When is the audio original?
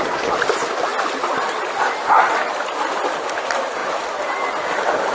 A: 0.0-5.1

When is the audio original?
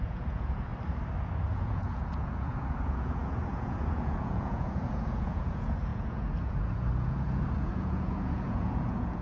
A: 0.7-1.4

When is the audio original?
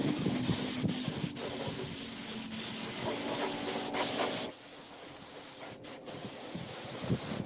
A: 0.0-4.5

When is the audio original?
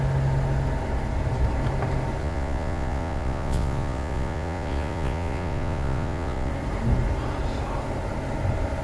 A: 0.0-2.2; 6.5-8.8